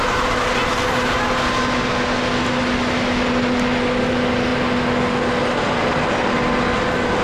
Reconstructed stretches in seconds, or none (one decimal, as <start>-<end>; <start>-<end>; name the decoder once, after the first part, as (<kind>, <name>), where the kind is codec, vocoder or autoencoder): none